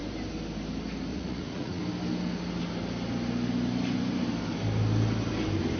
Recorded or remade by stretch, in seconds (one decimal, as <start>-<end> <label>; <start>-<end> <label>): 0.0-1.1 recorded; 1.1-1.8 remade; 1.8-5.8 recorded